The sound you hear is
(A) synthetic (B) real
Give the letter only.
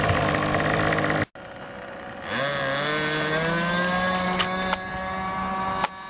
B